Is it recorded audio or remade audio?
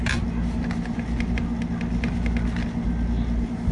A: recorded